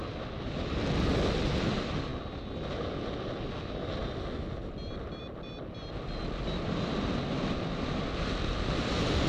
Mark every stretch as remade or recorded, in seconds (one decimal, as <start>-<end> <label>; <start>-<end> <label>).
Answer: 0.0-9.3 recorded